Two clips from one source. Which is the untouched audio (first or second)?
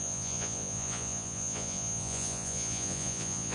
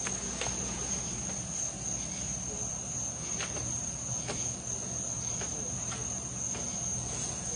second